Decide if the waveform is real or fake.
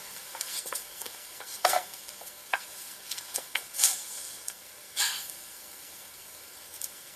fake